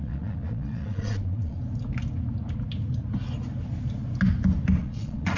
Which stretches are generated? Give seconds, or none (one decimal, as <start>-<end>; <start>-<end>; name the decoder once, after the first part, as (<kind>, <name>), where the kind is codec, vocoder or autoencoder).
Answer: 0.0-1.6 (vocoder, Vocos); 4.8-5.4